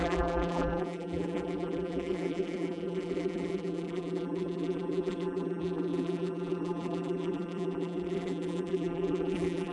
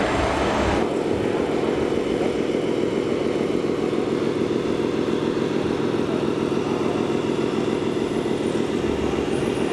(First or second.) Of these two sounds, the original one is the second